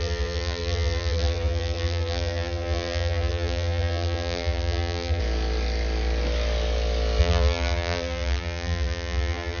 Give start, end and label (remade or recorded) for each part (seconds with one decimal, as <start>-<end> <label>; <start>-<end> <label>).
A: 0.0-5.2 remade; 5.2-7.2 recorded; 7.2-9.6 remade